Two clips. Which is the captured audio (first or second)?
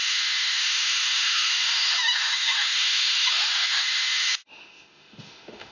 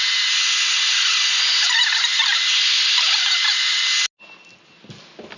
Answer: second